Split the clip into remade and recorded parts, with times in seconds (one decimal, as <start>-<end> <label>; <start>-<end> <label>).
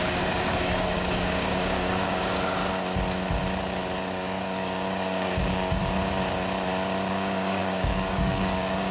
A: 0.0-2.6 remade; 2.6-4.0 recorded; 4.0-5.8 remade; 5.8-7.1 recorded; 7.1-8.9 remade